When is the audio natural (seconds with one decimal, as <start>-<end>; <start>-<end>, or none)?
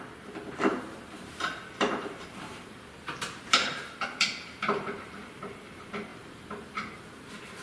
0.0-0.7; 5.3-6.1; 7.1-7.6